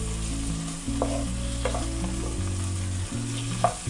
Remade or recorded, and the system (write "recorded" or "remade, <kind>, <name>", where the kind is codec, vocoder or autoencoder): recorded